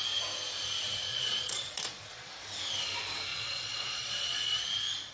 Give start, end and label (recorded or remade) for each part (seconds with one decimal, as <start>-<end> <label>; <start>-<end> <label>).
0.0-1.1 recorded; 1.1-2.3 remade; 2.3-3.3 recorded; 3.3-4.6 remade; 4.6-5.1 recorded

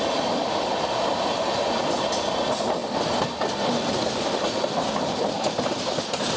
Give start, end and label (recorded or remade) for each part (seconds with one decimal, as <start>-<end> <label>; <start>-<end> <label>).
0.0-6.4 recorded

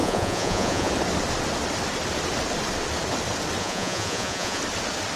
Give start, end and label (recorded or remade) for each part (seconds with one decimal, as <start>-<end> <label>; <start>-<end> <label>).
0.0-0.9 remade; 0.9-3.6 recorded; 3.6-4.6 remade; 4.6-5.2 recorded

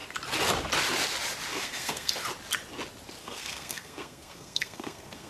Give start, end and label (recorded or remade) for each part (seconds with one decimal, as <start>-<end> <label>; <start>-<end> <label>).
0.0-1.5 recorded; 1.5-2.1 remade; 2.1-3.2 recorded; 3.2-5.3 remade

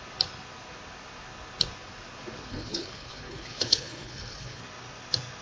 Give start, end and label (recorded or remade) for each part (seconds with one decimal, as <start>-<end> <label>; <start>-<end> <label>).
0.0-2.5 recorded; 2.5-4.6 remade; 4.6-5.4 recorded